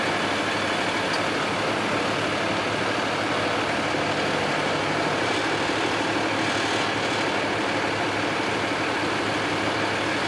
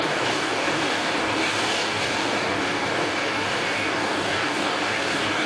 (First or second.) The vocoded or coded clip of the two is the second